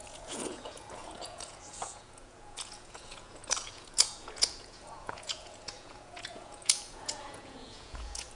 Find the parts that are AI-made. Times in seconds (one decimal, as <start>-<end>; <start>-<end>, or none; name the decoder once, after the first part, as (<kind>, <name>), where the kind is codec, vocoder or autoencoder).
0.0-8.4 (vocoder, Vocos)